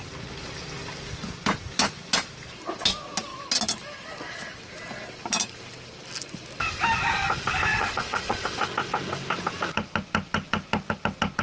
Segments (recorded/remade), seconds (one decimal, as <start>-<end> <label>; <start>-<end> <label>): 0.0-7.7 recorded; 7.7-8.4 remade; 8.4-11.4 recorded